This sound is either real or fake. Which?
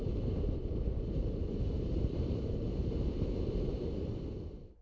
fake